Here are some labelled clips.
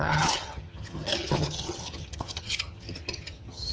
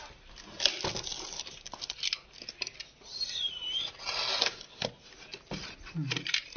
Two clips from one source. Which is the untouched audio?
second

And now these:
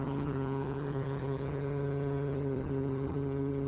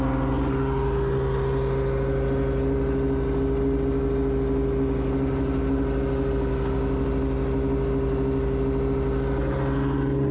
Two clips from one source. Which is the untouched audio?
second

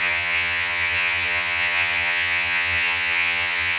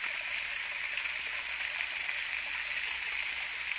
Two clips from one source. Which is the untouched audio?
second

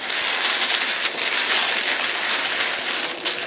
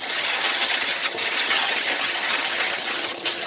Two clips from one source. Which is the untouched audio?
first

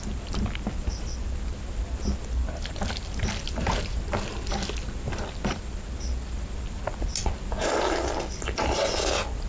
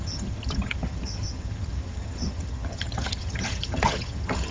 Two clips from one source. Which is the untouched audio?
first